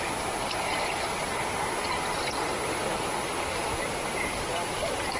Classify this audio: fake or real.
real